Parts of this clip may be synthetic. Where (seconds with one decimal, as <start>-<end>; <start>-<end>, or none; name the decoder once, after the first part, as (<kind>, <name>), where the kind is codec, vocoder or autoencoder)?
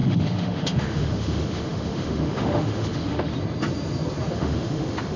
0.0-3.3 (autoencoder, DAC-VAE); 4.3-5.2